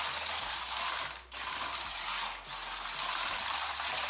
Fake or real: real